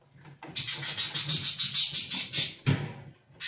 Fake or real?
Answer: real